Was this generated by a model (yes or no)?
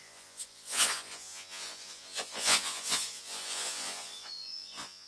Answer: yes